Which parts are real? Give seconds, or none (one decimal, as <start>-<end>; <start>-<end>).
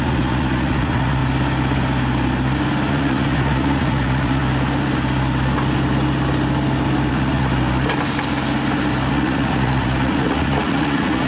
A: 1.2-2.9; 4.4-7.1; 7.5-9.1